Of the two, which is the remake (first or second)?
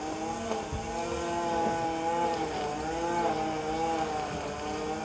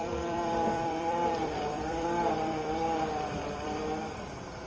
second